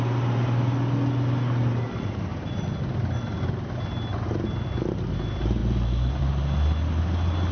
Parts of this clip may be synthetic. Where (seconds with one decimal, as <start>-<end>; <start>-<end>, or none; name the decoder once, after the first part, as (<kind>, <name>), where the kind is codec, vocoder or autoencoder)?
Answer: none